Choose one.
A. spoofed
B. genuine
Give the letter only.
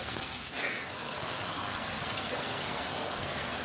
A